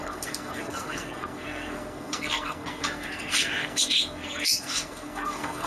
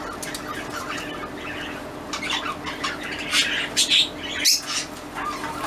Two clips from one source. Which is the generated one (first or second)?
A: first